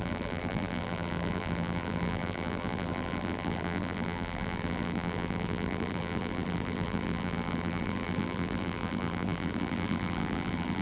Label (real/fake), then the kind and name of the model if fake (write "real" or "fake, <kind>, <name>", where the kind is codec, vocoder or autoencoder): fake, vocoder, BigVGAN v2